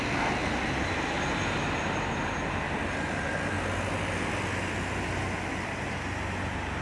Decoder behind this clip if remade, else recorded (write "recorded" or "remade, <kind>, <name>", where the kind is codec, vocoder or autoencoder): recorded